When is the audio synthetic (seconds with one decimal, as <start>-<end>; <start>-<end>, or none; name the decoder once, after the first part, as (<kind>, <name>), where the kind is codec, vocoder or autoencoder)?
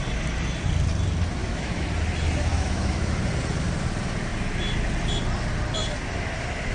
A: 1.4-1.9 (autoencoder, DAC-VAE); 2.5-3.1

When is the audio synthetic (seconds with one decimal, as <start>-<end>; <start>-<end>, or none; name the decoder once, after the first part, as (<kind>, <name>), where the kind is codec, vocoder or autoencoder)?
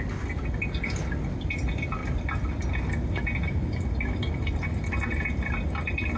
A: none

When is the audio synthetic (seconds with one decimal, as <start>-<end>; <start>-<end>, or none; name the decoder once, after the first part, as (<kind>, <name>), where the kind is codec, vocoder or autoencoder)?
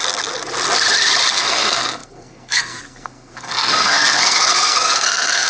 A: 1.4-5.5 (codec, SNAC)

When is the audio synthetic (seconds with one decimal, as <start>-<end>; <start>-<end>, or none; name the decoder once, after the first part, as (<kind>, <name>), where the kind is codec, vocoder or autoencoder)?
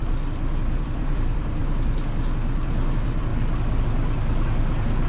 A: 0.8-1.6 (vocoder, BigVGAN v2); 2.7-3.3; 3.8-5.1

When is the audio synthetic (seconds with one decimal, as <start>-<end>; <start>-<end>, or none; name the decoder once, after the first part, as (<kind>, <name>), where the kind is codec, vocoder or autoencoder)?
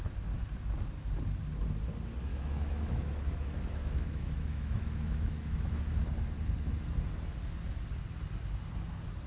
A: 2.3-5.8 (autoencoder, DAC-VAE)